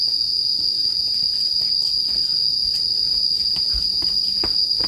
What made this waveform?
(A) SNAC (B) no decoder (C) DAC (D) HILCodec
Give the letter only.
B